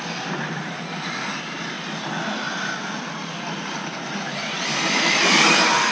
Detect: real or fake real